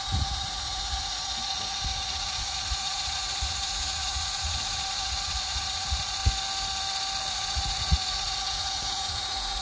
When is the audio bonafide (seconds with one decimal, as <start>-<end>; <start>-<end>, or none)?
6.2-7.3